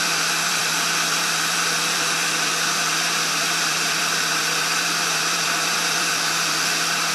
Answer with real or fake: fake